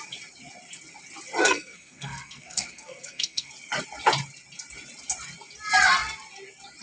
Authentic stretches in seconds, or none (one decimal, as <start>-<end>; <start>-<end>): 0.0-1.4; 3.5-6.8